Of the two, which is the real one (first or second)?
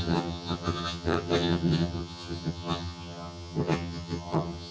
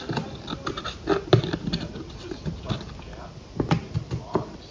second